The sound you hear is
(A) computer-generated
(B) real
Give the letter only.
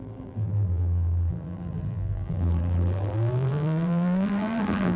A